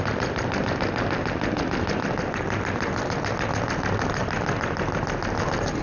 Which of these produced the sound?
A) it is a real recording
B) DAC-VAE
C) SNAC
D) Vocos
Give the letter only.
A